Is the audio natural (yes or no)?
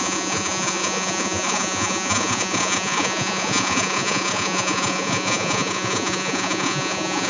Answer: no